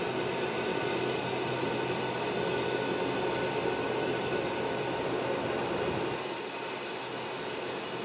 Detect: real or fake real